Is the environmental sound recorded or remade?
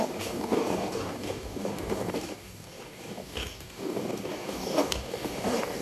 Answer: remade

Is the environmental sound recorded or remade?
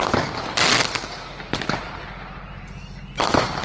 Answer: recorded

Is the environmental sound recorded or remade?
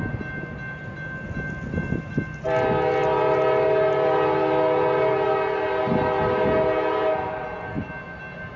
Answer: recorded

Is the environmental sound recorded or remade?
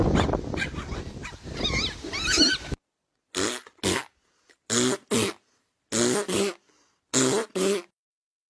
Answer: recorded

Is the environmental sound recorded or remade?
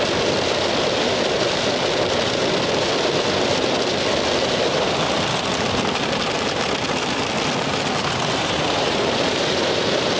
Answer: remade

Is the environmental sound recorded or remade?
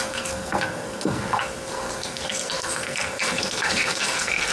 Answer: remade